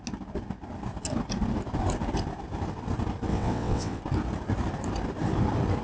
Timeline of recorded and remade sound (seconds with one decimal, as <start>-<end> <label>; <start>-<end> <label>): 0.0-3.3 recorded; 3.3-4.0 remade; 4.0-5.8 recorded